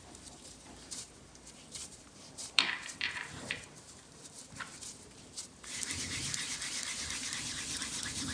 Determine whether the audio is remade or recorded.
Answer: remade